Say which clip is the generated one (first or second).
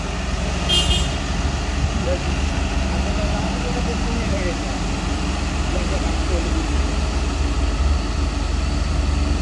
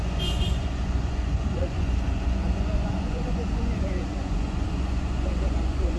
second